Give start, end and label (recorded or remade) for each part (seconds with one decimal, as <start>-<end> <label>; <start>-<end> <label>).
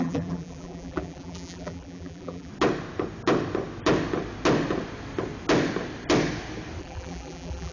0.0-2.5 remade; 2.5-6.8 recorded; 6.8-7.7 remade